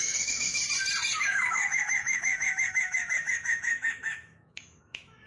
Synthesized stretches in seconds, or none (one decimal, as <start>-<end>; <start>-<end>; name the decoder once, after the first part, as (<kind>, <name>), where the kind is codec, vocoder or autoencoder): 0.0-0.6 (autoencoder, DAC-VAE); 1.2-5.3